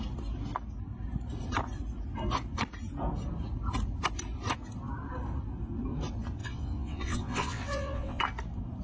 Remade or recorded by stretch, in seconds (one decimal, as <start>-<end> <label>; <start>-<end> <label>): 0.0-6.4 recorded; 6.4-8.2 remade; 8.2-8.8 recorded